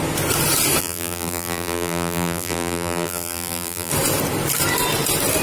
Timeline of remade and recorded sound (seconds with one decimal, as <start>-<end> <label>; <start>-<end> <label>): 0.0-0.8 recorded; 0.8-3.9 remade; 3.9-5.4 recorded